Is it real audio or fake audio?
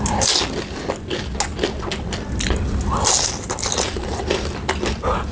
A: real